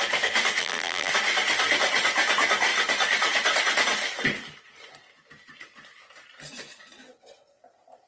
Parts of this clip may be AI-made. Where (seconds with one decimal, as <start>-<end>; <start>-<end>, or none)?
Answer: 0.6-1.1